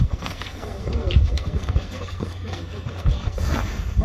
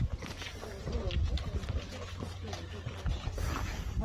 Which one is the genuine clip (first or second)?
second